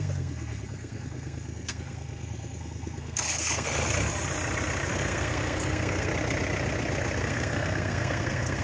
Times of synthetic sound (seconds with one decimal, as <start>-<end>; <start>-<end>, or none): 0.0-3.8; 4.9-6.1; 7.2-8.6